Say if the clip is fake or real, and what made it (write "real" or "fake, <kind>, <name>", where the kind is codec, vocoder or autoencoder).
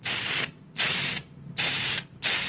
real